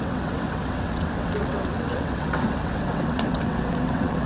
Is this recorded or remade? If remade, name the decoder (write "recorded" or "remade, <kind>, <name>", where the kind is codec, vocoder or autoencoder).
remade, vocoder, WaveNeXt